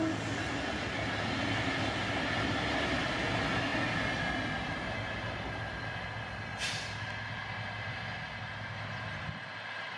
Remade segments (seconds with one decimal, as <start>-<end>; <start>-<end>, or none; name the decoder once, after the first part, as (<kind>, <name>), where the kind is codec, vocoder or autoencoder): none